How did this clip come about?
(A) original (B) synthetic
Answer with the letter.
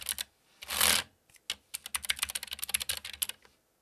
A